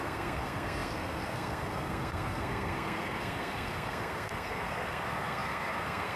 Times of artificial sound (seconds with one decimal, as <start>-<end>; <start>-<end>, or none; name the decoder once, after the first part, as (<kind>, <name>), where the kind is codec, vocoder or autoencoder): 0.0-6.2 (codec, SNAC)

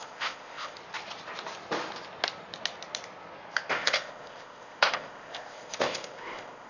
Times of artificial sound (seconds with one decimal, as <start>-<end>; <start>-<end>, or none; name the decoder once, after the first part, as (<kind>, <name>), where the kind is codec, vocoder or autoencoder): 0.0-0.8 (codec, ZipCodec); 3.7-6.7